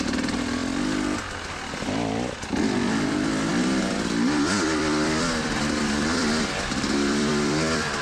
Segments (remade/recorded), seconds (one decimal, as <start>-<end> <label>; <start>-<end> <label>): 0.0-0.6 remade; 0.6-1.6 recorded; 1.6-8.0 remade